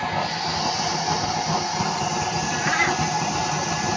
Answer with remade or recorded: recorded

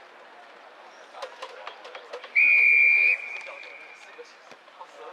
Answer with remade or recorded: recorded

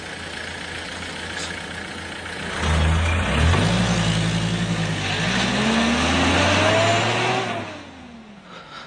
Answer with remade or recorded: recorded